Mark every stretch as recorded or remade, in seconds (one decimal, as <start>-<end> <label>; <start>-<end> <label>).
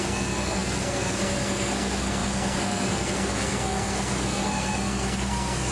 0.0-5.7 remade